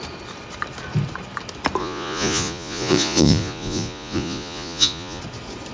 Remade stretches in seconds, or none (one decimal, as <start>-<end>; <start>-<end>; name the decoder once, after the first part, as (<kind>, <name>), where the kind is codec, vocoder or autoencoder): 1.8-5.2 (vocoder, Vocos)